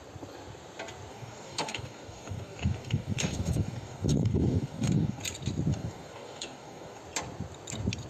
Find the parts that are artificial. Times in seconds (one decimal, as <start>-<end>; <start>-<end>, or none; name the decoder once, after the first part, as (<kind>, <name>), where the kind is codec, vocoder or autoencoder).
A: 1.1-5.2 (codec, DAC); 5.7-7.0